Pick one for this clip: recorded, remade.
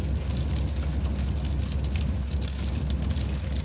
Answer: recorded